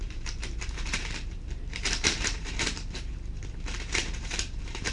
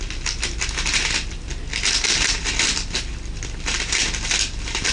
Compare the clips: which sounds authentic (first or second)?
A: second